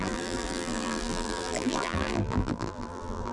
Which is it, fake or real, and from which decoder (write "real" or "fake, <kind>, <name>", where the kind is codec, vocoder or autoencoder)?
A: fake, vocoder, BigVGAN v2